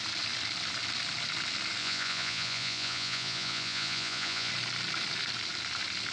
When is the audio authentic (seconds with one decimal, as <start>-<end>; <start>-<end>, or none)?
0.0-1.8; 4.5-6.1